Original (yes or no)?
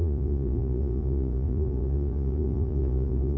no